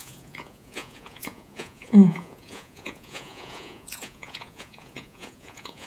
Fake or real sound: fake